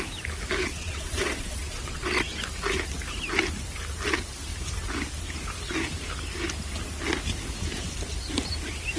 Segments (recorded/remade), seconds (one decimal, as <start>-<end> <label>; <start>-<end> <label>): 0.0-0.7 recorded; 0.7-2.4 remade; 2.4-9.0 recorded